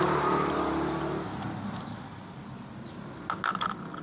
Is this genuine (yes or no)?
yes